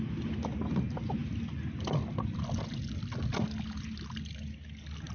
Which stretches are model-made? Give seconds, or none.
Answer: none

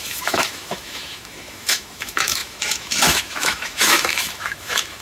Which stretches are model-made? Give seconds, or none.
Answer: 0.0-5.0 (autoencoder, DAC-VAE)

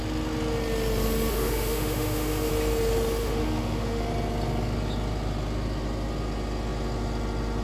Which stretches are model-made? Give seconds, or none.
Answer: 1.3-2.5 (autoencoder, DAC-VAE); 3.2-4.0

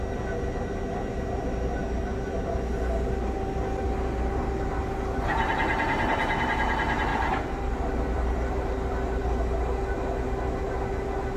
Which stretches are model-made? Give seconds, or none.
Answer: 7.1-9.2 (vocoder, BigVGAN v2)

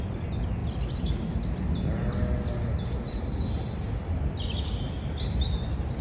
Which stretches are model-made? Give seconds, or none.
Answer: none